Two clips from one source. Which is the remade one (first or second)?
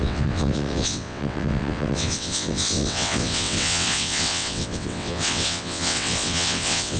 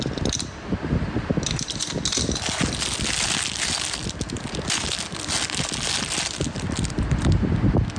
first